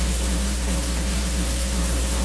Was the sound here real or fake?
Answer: fake